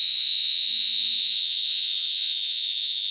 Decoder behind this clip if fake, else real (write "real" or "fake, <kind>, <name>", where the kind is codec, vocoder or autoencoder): fake, vocoder, Vocos